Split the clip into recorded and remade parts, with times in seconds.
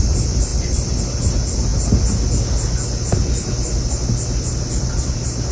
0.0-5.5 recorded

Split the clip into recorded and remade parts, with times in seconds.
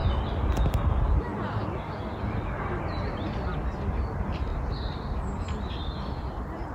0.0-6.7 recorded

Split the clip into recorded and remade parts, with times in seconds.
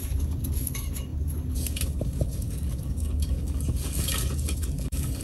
0.0-5.2 remade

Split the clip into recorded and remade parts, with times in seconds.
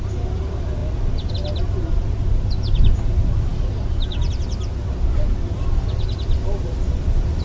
0.0-7.4 recorded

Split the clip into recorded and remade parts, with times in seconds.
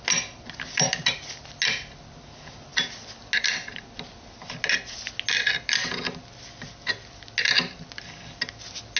0.0-9.0 recorded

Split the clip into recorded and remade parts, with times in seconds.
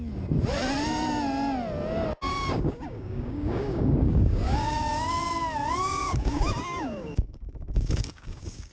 0.0-2.3 recorded; 2.3-5.1 remade; 5.1-5.8 recorded; 5.8-8.7 remade